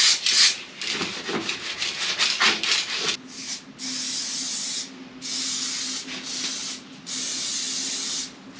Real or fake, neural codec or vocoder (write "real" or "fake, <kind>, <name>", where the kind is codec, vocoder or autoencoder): real